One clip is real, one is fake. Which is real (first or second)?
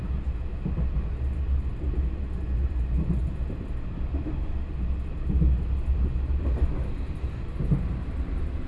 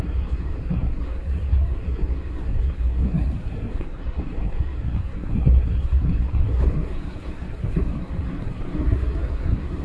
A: first